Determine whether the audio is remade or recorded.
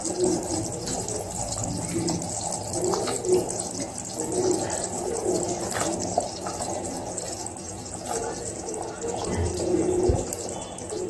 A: recorded